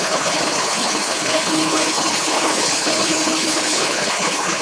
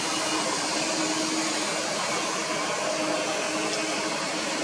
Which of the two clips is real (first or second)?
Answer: second